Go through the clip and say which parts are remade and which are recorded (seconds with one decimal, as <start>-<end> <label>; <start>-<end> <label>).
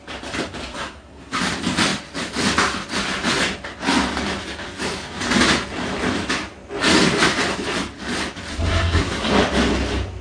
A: 0.0-0.7 recorded; 0.7-1.4 remade; 1.4-8.5 recorded; 8.5-9.3 remade; 9.3-10.2 recorded